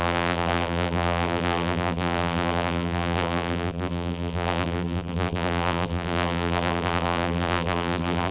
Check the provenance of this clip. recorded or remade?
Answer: remade